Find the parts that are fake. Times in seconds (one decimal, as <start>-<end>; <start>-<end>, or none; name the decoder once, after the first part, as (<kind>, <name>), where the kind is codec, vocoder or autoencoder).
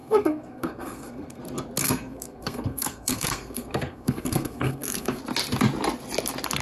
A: 0.0-1.4 (codec, SNAC); 1.8-5.2